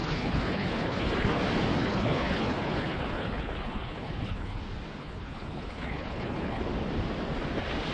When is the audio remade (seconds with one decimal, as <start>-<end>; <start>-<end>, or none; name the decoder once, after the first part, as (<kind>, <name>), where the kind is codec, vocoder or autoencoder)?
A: 0.0-1.4 (codec, HILCodec); 1.8-4.6; 5.0-6.6